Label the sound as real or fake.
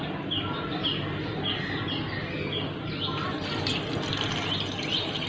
real